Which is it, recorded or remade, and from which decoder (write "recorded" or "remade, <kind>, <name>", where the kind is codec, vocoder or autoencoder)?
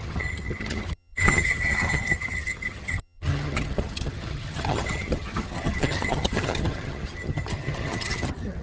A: remade, vocoder, HiFi-GAN